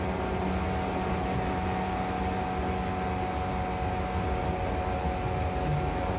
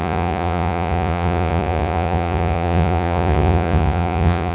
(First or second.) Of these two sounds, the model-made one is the second